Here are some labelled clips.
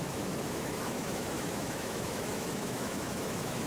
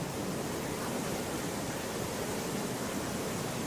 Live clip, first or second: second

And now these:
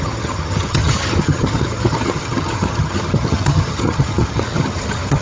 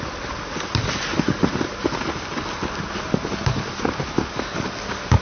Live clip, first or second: second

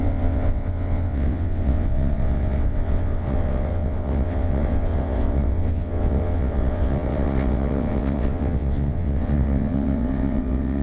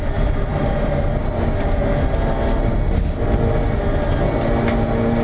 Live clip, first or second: second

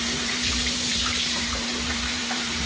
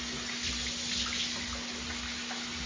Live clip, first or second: second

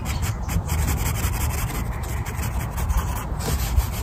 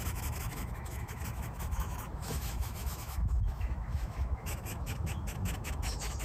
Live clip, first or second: first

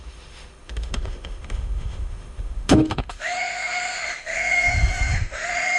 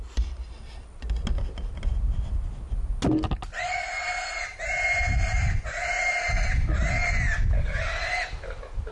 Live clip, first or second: second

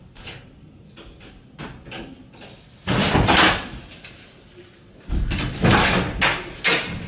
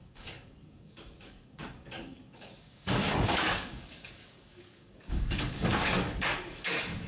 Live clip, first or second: first